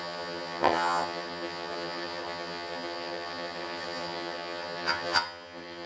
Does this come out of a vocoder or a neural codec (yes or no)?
yes